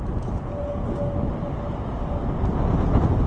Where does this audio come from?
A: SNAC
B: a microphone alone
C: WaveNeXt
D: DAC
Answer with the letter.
B